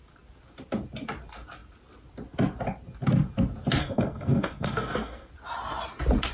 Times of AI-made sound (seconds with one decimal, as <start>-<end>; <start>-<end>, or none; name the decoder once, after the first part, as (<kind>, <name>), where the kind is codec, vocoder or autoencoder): 3.8-5.3 (codec, SNAC)